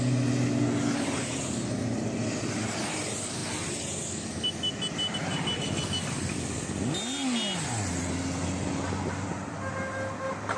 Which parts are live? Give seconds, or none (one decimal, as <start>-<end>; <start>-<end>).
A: 0.0-10.6